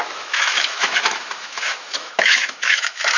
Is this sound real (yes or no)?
no